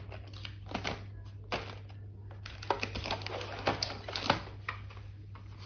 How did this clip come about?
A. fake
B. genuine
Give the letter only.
B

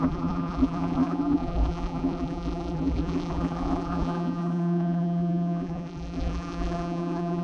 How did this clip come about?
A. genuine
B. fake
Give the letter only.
B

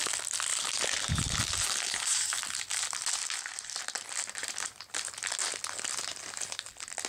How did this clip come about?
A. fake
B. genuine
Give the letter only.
B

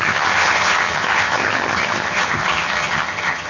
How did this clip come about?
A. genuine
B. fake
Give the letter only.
B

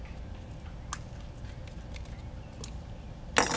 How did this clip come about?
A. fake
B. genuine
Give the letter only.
B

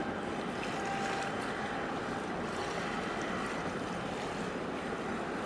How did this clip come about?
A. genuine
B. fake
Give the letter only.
A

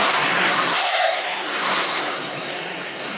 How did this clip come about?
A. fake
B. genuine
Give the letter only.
A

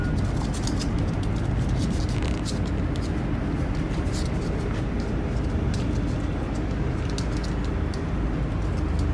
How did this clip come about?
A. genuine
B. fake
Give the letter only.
A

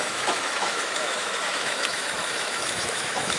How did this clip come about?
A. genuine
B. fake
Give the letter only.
B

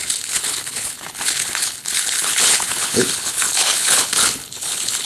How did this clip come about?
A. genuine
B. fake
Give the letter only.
B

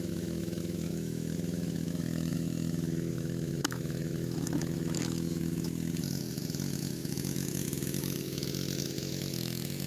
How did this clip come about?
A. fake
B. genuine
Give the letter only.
A